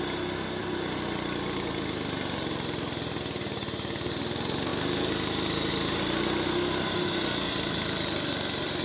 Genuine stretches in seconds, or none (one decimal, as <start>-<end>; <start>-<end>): 0.0-0.6; 3.2-8.8